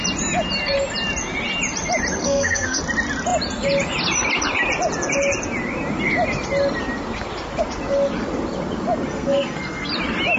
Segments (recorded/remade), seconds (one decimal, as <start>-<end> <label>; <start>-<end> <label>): 0.0-2.2 recorded; 2.2-2.8 remade; 2.8-9.1 recorded; 9.1-9.9 remade; 9.9-10.4 recorded